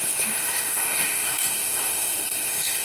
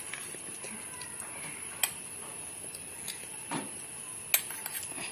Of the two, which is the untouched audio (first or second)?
second